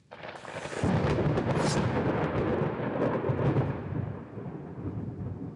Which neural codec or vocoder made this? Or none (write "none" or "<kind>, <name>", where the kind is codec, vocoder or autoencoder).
none